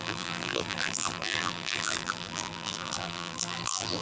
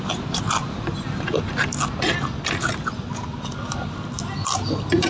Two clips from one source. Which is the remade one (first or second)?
first